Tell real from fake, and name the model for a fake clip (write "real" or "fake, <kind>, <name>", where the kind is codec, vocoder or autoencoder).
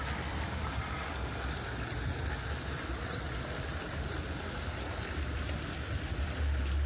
real